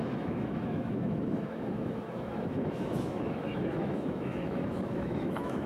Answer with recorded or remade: remade